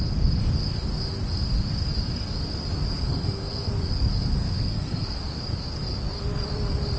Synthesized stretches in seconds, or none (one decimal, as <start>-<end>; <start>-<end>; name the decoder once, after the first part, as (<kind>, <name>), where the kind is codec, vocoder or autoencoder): 3.1-3.7 (codec, SNAC); 4.3-5.2